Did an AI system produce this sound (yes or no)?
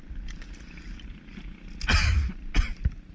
no